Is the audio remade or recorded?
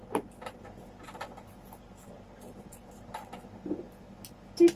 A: recorded